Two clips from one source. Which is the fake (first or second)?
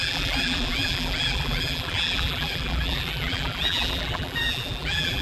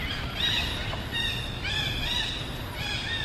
first